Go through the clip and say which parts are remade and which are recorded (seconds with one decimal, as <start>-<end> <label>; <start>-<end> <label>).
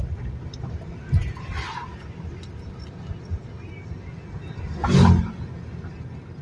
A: 0.0-6.4 recorded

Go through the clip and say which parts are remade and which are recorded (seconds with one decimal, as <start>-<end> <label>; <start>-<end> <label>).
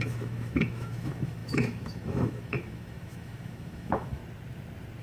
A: 0.0-4.2 remade; 4.2-5.0 recorded